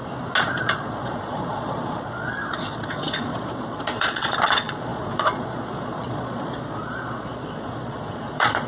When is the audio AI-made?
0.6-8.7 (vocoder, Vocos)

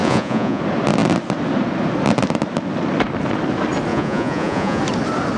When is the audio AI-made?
0.0-0.6 (vocoder, Vocos); 3.9-4.8

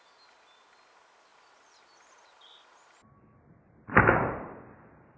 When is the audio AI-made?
none

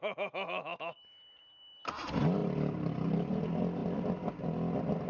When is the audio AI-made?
none

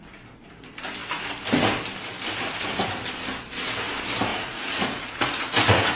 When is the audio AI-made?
4.3-6.0 (vocoder, Vocos)

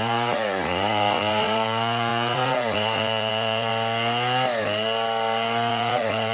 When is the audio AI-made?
0.0-3.7 (vocoder, Vocos); 5.7-6.3

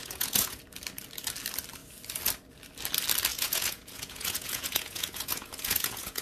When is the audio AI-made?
0.0-0.6 (vocoder, Vocos); 3.3-6.2

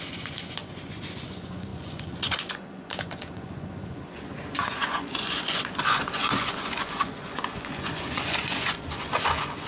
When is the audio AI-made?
0.0-9.7 (vocoder, Vocos)